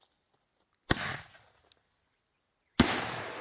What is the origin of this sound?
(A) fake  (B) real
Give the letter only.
B